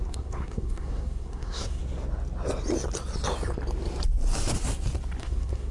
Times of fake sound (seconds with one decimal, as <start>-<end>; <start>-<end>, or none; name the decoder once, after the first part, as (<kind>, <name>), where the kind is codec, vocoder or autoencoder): 0.0-1.8 (codec, SNAC); 5.2-5.7

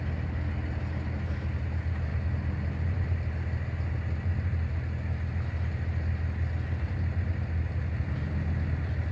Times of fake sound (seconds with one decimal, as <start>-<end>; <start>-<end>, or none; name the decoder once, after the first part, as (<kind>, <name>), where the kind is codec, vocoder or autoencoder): none

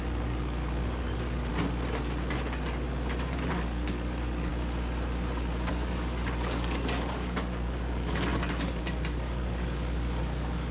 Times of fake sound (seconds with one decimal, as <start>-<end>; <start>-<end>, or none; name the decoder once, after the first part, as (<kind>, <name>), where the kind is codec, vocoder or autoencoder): 0.0-1.5 (codec, DAC); 3.5-4.5; 5.7-10.7

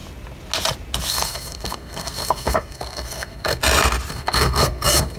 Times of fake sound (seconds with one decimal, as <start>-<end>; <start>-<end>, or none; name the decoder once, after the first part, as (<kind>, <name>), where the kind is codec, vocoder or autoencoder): 1.1-3.6 (codec, SNAC); 4.1-5.2

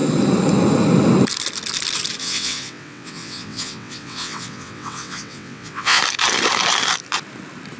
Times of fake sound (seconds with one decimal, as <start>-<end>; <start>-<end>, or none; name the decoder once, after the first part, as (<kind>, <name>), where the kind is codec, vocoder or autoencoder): 2.2-6.0 (vocoder, WaveNeXt)

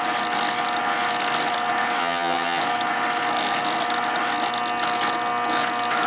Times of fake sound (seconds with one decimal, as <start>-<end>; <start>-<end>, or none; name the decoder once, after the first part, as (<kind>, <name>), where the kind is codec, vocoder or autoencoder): 2.0-2.6 (vocoder, HiFi-GAN)